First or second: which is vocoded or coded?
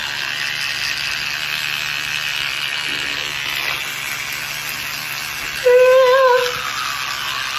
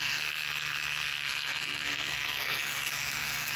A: second